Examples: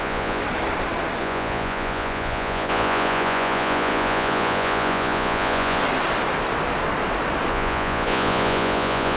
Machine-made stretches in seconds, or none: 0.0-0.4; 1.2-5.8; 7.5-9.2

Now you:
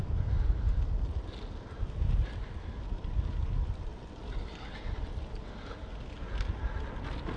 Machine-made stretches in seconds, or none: none

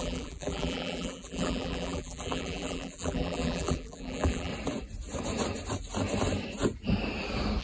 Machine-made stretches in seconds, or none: 0.0-4.5

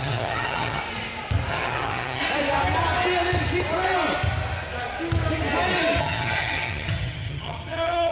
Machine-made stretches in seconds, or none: 0.0-0.8; 1.5-2.2; 6.0-8.1